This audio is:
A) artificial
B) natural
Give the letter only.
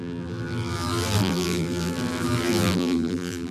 A